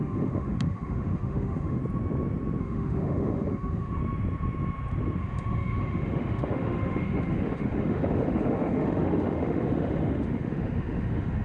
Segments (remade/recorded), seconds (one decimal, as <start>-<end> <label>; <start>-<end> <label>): 0.0-1.8 remade; 1.8-2.6 recorded; 2.6-4.0 remade; 4.0-5.2 recorded; 5.2-11.4 remade